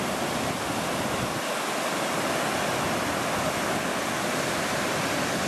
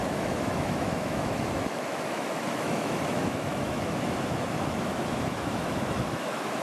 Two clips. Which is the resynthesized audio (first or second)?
second